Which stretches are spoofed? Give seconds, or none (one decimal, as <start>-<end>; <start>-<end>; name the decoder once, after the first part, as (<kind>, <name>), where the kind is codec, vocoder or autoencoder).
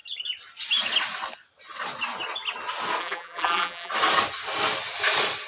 3.0-3.9 (vocoder, BigVGAN v2)